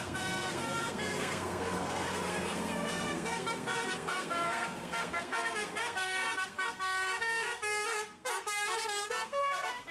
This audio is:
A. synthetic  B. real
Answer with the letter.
A